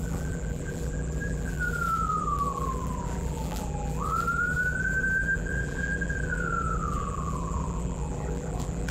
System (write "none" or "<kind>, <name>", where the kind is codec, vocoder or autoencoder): vocoder, BigVGAN v2